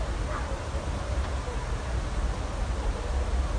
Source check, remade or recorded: recorded